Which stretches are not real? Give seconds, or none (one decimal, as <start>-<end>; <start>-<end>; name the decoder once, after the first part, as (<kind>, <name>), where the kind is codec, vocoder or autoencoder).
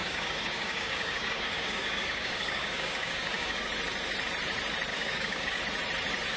0.0-3.7 (codec, DAC); 4.9-5.6